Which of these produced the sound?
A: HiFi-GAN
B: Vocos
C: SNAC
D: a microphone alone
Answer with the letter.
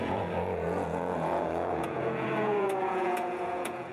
B